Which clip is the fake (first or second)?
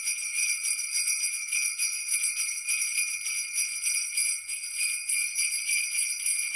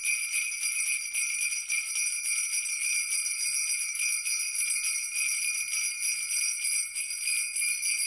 first